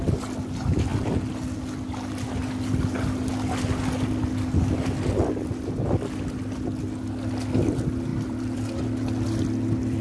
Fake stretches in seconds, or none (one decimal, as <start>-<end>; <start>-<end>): 8.1-8.6